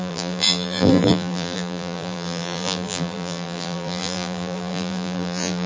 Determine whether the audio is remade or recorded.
remade